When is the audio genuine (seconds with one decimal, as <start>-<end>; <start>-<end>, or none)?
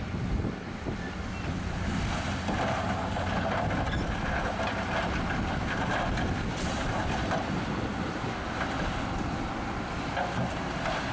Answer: 0.0-11.1